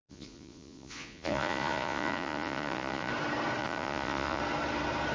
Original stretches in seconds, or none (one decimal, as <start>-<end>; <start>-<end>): 3.1-3.6; 4.4-5.1